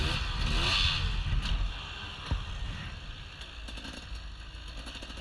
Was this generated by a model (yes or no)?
no